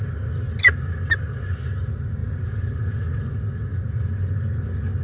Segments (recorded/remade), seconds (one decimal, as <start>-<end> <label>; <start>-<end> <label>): 0.0-2.2 recorded; 2.2-2.8 remade; 2.8-3.7 recorded; 3.7-4.6 remade; 4.6-5.0 recorded